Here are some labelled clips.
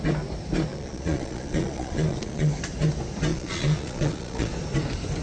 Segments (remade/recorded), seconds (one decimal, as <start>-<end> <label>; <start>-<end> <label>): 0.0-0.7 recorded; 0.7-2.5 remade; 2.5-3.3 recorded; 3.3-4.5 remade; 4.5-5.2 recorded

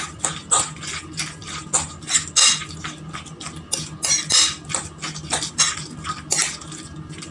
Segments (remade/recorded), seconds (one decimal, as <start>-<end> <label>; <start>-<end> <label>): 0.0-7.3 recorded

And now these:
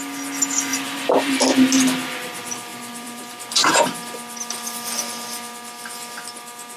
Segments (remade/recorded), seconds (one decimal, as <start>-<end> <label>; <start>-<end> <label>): 0.0-0.7 recorded; 0.7-1.8 remade; 1.8-2.7 recorded; 2.7-3.7 remade; 3.7-6.8 recorded

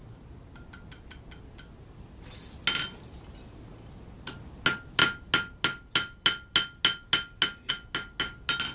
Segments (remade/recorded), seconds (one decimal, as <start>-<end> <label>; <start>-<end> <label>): 0.0-8.7 recorded

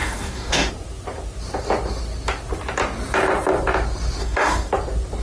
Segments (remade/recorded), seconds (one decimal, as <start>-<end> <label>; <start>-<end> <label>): 0.0-0.7 remade; 0.7-4.2 recorded; 4.2-4.7 remade; 4.7-5.2 recorded